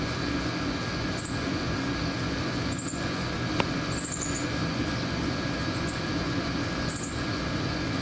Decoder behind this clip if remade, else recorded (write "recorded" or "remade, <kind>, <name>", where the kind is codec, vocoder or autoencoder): remade, vocoder, Vocos